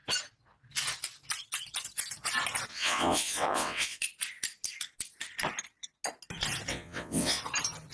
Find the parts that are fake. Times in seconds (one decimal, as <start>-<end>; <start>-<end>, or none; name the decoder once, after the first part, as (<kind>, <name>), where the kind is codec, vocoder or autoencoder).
2.7-4.0 (vocoder, WaveNeXt); 6.7-7.4